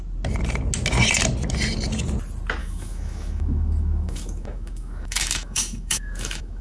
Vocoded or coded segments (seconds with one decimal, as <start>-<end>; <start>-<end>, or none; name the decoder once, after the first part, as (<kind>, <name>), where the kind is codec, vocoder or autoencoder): 2.6-6.6 (autoencoder, DAC-VAE)